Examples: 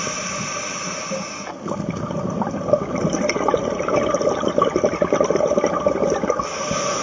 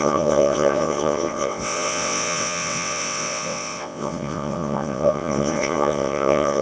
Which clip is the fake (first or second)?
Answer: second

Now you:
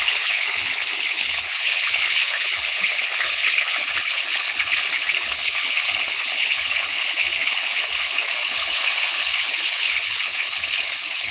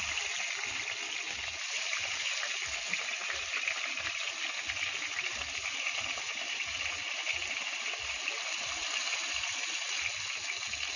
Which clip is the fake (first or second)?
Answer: first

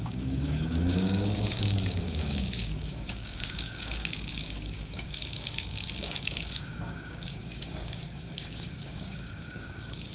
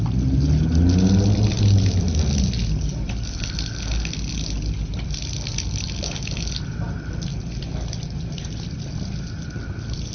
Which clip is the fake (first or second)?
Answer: first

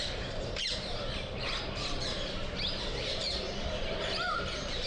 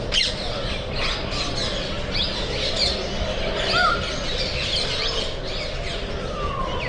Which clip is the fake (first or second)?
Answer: first